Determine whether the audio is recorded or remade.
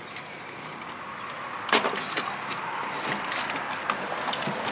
recorded